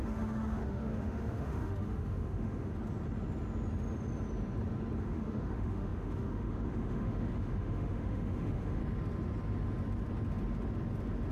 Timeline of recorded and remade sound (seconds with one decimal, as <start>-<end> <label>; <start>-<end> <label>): 0.0-2.7 remade; 2.7-5.0 recorded; 5.0-8.8 remade; 8.8-11.3 recorded